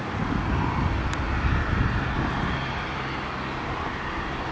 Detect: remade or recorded recorded